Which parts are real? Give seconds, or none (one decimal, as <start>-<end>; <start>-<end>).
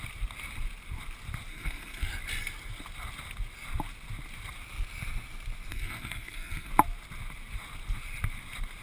0.0-1.5; 2.1-5.7; 6.7-8.8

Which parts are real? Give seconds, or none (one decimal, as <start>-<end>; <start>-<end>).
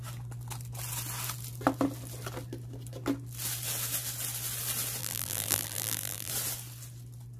0.0-5.0; 6.3-7.4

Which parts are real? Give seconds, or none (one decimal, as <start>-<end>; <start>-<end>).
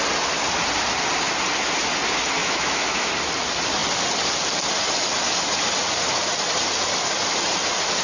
0.0-2.4; 3.1-8.0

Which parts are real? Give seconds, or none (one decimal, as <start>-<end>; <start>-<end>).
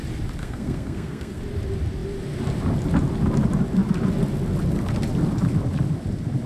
0.0-0.4; 1.4-6.5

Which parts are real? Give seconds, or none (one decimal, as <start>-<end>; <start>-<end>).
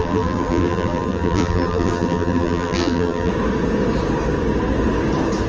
3.3-5.5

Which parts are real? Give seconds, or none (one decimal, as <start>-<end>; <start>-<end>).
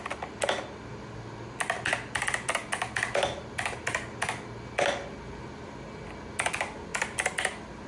0.0-7.9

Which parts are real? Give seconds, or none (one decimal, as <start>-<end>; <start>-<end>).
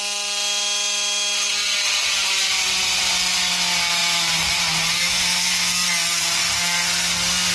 0.0-7.5